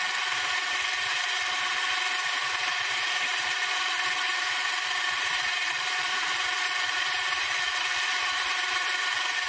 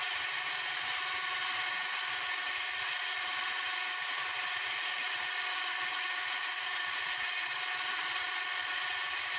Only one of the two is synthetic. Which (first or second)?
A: first